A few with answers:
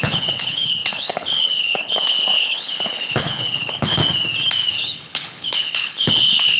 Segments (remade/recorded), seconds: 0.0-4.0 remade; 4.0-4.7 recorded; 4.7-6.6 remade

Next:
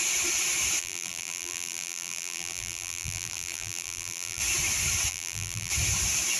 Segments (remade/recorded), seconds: 0.0-0.8 recorded; 0.8-4.4 remade; 4.4-5.1 recorded; 5.1-5.7 remade; 5.7-6.4 recorded

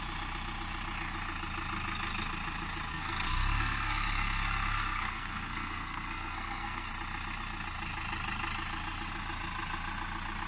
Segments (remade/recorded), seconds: 0.0-2.9 recorded; 2.9-6.9 remade; 6.9-10.5 recorded

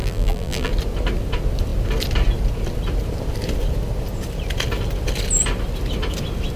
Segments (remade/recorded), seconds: 0.0-0.7 remade; 0.7-6.6 recorded

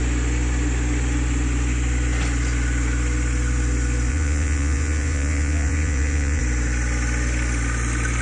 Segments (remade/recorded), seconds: 0.0-4.1 recorded; 4.1-6.4 remade; 6.4-8.2 recorded

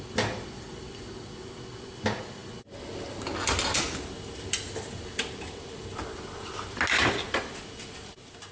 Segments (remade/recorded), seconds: 0.0-8.5 recorded